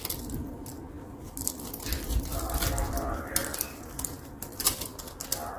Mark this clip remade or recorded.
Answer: recorded